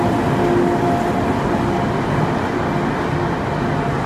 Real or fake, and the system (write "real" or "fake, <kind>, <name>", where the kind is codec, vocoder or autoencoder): real